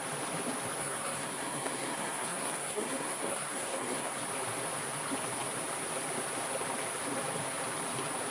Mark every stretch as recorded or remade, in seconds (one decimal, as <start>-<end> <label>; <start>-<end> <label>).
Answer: 0.0-0.8 recorded; 0.8-4.2 remade; 4.2-8.3 recorded

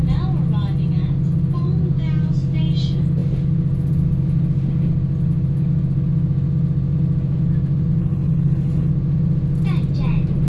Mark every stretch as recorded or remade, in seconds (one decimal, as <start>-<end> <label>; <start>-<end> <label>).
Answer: 0.0-8.0 recorded; 8.0-8.9 remade; 8.9-10.5 recorded

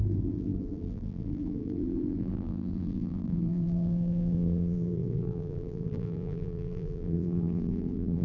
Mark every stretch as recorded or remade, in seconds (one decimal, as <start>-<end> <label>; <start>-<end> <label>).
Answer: 0.0-8.2 remade

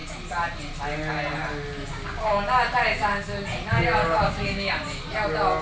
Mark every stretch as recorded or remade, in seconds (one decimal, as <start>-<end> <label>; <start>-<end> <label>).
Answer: 0.0-1.9 recorded; 1.9-2.6 remade; 2.6-4.0 recorded; 4.0-4.7 remade; 4.7-5.6 recorded

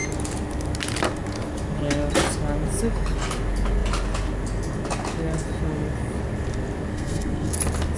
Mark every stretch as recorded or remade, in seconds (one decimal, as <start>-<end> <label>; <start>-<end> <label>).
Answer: 0.0-6.9 recorded; 6.9-7.5 remade; 7.5-8.0 recorded